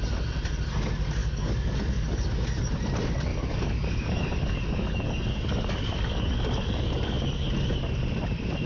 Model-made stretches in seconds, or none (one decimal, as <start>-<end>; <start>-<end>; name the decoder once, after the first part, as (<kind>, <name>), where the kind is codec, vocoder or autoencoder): 1.2-2.2 (codec, DAC); 3.3-7.5